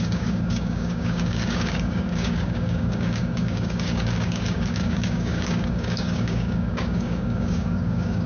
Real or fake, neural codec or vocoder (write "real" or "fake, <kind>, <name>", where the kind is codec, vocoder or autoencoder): fake, codec, DAC